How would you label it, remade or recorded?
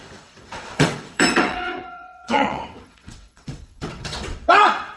remade